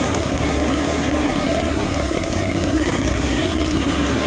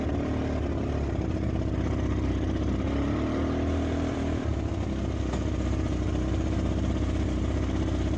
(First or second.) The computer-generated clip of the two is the first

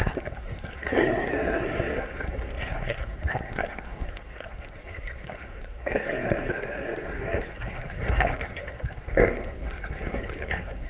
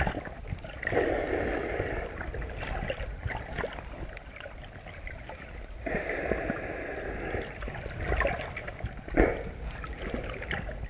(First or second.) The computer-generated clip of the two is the first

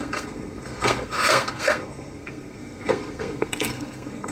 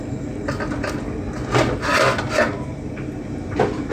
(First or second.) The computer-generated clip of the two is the first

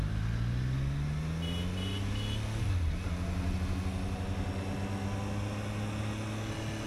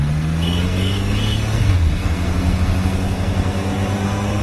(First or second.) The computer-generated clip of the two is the second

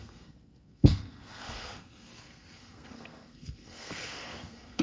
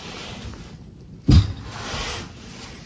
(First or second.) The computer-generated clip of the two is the first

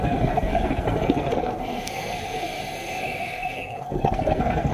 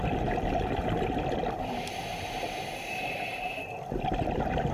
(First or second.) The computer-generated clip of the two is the first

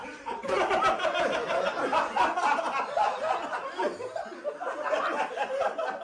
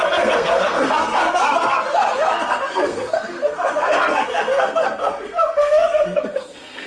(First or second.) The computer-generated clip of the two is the second